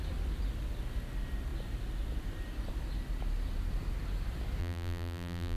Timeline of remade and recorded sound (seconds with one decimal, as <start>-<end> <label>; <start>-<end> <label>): 0.0-4.6 recorded; 4.6-5.6 remade